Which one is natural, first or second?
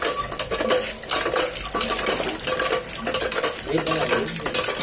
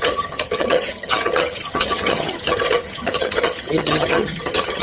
first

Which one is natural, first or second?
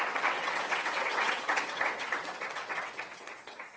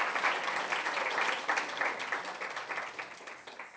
second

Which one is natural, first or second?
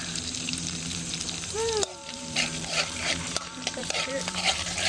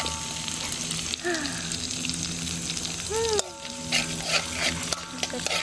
second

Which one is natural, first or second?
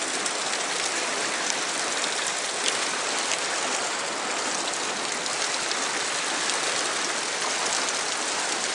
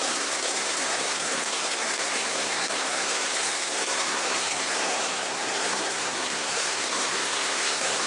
first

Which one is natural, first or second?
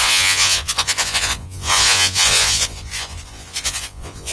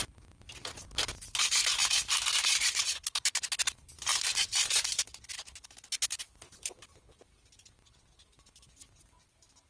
second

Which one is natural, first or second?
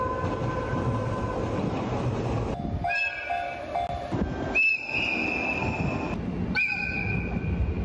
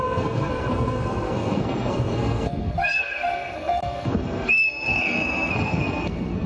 first